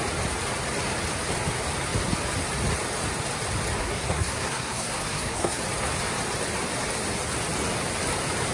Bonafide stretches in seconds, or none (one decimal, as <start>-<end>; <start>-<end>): 0.0-3.8; 5.6-8.5

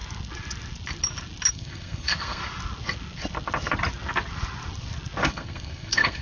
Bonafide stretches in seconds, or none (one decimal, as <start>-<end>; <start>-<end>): 0.0-1.5; 2.4-5.3

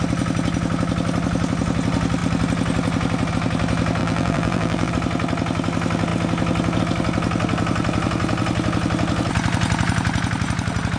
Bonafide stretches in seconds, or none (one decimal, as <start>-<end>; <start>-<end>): 0.0-4.0; 4.9-11.0

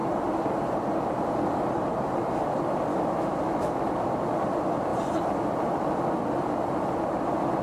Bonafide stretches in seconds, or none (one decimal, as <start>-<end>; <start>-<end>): 0.0-2.9; 4.0-7.6

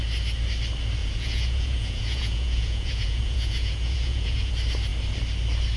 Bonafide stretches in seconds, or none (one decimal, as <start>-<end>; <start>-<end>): 0.0-1.0; 4.5-5.8

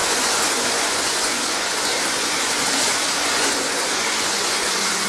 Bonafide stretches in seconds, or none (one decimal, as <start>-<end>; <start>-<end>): none

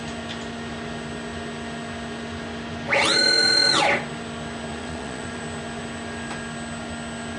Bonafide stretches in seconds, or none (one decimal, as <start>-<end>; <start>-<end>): 0.0-4.7; 5.4-7.4

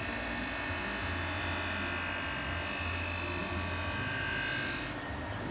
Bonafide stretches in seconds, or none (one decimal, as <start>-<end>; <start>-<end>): 0.0-5.5